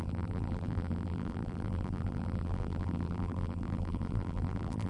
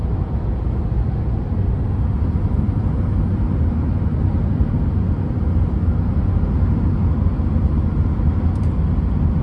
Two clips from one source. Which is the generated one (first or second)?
first